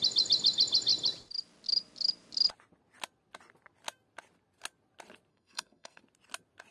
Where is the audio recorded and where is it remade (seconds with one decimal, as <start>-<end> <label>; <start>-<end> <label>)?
0.0-5.3 recorded; 5.3-6.0 remade; 6.0-6.7 recorded

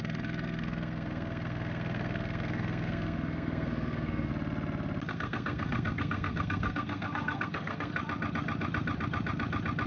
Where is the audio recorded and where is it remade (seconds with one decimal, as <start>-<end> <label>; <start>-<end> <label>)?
0.0-4.3 remade; 4.3-5.1 recorded; 5.1-7.9 remade; 7.9-9.9 recorded